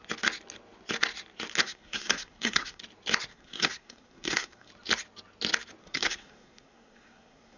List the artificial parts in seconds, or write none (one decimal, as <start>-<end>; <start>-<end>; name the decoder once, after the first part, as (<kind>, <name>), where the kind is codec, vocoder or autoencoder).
1.6-2.8 (codec, SNAC); 3.3-4.7; 5.8-7.6